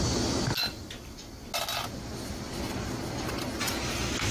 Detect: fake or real real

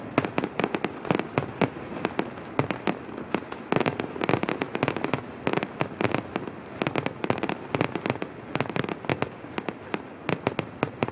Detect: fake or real real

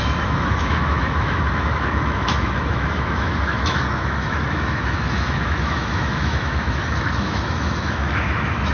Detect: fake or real fake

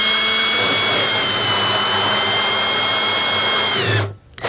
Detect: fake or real real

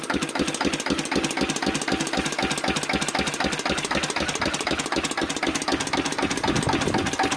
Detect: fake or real real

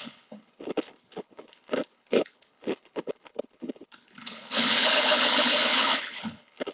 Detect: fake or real fake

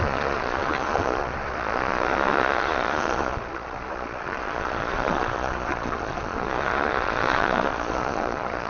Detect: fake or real fake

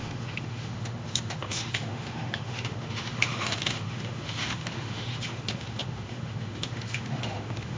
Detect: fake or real fake